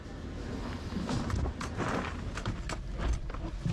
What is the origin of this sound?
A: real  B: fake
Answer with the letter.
A